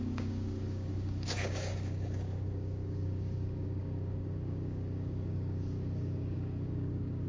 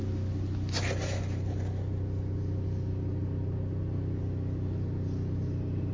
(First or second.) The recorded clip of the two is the second